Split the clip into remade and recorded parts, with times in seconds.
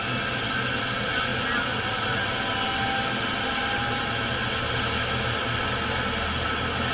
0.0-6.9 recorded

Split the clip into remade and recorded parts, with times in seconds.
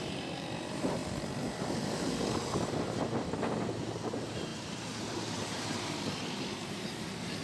0.0-1.0 remade; 1.0-4.0 recorded; 4.0-7.4 remade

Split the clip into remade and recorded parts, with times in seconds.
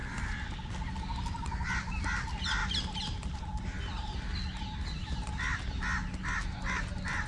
0.0-0.7 recorded; 0.7-2.6 remade; 2.6-6.8 recorded; 6.8-7.3 remade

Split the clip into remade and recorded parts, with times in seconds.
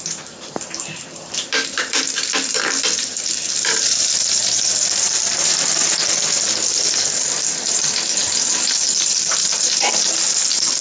0.0-8.2 remade; 8.2-9.1 recorded; 9.1-10.8 remade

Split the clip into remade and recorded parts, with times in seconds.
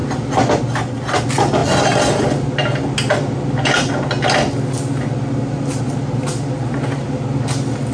0.0-7.9 recorded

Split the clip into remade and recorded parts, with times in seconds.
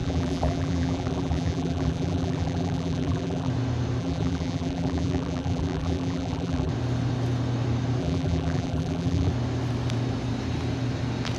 0.0-3.5 remade; 3.5-4.0 recorded; 4.0-6.7 remade; 6.7-8.0 recorded; 8.0-9.3 remade; 9.3-11.4 recorded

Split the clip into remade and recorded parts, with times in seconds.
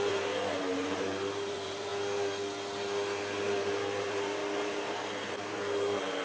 0.0-1.9 remade; 1.9-4.0 recorded; 4.0-6.2 remade